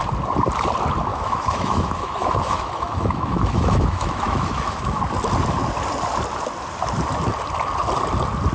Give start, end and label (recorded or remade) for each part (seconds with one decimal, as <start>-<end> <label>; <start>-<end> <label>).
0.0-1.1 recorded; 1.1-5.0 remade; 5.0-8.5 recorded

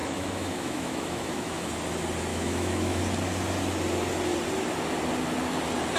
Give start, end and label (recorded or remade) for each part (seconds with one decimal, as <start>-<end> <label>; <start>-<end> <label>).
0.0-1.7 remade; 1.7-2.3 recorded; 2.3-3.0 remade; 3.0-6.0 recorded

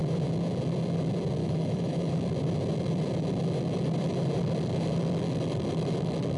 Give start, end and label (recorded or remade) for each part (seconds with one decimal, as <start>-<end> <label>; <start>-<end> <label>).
0.0-1.4 recorded; 1.4-2.1 remade; 2.1-6.4 recorded